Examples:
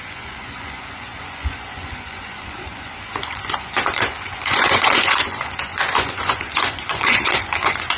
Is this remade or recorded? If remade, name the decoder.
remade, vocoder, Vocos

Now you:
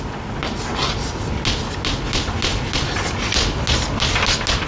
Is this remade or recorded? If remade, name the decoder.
recorded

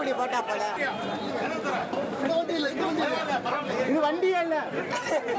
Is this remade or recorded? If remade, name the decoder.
recorded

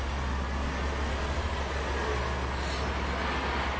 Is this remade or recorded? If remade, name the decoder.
recorded